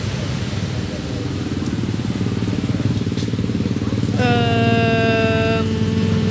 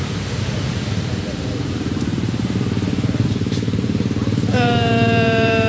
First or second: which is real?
first